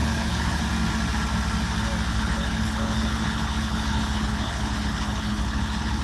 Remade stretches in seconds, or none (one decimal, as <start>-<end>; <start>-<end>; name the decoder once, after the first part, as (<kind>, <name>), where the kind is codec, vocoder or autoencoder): 0.0-0.6 (codec, HILCodec); 2.1-6.0